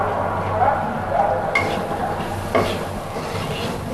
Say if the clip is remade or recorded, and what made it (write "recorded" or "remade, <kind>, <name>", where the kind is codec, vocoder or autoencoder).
recorded